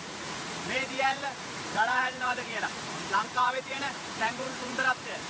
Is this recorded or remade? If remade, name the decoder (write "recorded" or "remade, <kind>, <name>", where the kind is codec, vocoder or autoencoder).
remade, vocoder, Vocos